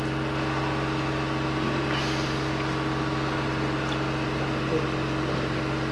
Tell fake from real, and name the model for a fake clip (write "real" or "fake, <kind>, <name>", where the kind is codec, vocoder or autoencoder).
real